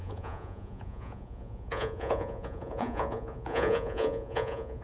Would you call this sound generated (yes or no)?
yes